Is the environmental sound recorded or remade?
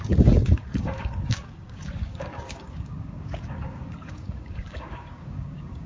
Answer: remade